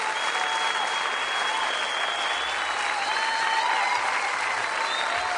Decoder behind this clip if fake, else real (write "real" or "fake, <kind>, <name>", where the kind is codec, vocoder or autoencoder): real